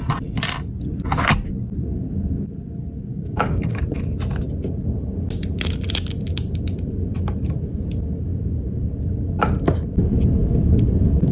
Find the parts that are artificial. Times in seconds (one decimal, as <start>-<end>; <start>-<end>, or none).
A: 3.1-3.8